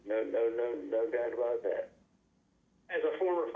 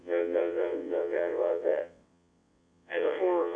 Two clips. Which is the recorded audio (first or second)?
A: first